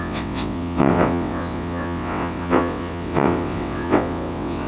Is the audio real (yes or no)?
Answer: no